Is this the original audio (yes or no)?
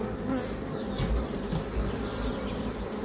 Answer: yes